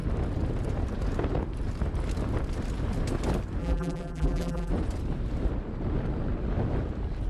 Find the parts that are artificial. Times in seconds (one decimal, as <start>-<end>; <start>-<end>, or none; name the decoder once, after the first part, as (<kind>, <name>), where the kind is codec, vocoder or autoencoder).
3.6-4.7 (vocoder, BigVGAN v2)